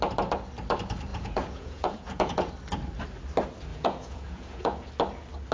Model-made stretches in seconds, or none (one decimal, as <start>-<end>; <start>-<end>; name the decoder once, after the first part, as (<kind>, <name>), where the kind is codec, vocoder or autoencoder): 1.1-2.5 (vocoder, Vocos); 3.7-4.9